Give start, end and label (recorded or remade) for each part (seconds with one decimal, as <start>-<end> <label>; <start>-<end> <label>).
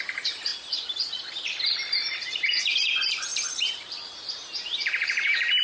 0.0-0.5 remade; 0.5-1.3 recorded; 1.3-3.3 remade; 3.3-4.1 recorded; 4.1-5.6 remade